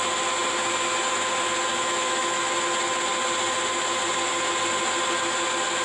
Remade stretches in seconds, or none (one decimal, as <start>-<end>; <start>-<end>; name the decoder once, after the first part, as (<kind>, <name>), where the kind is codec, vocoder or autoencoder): 1.7-2.4 (autoencoder, DAC-VAE)